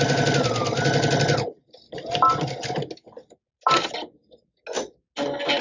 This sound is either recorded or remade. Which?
recorded